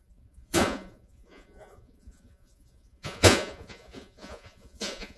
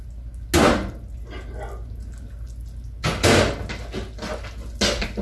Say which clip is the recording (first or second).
second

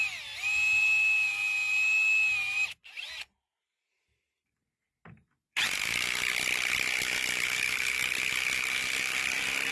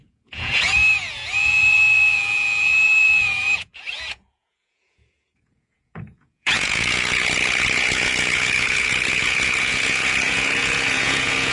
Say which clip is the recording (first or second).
first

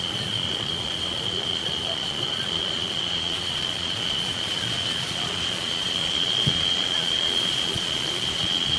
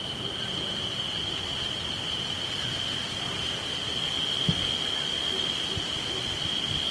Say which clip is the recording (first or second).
second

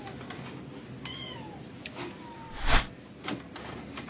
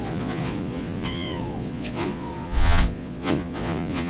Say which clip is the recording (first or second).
first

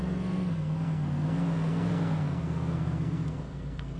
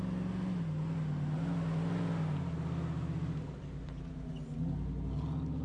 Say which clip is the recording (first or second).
second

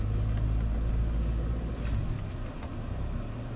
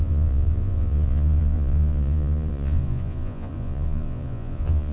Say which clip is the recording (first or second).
first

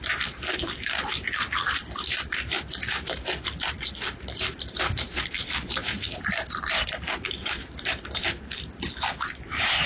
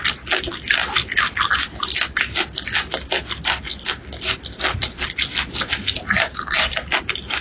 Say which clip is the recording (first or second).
second